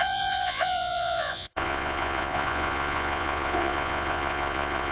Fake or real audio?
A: fake